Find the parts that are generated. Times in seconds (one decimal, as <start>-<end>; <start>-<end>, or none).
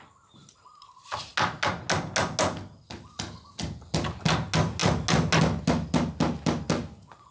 none